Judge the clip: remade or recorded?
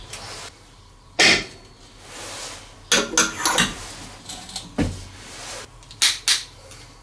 recorded